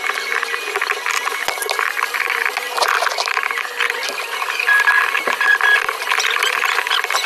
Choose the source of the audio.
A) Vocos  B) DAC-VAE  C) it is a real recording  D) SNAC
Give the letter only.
C